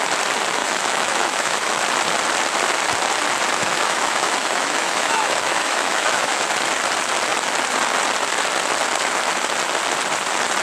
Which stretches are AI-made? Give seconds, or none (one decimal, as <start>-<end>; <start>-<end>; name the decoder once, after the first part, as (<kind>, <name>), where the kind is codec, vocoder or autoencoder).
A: 0.6-1.8 (autoencoder, DAC-VAE); 3.6-6.4